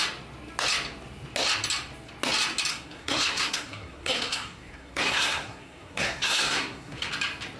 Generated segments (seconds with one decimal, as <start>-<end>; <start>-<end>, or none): 2.7-7.1